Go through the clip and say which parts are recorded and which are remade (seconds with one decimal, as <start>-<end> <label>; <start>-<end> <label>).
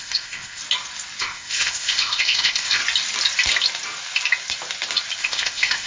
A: 0.0-0.6 remade; 0.6-1.2 recorded; 1.2-2.8 remade; 2.8-5.2 recorded; 5.2-5.9 remade